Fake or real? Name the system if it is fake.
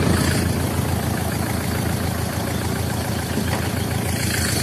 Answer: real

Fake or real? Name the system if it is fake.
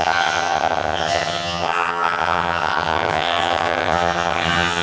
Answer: fake, vocoder, HiFi-GAN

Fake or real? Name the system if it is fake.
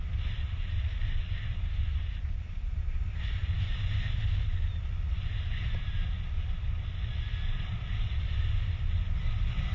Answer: real